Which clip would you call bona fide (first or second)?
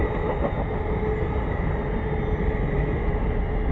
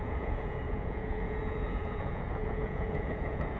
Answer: first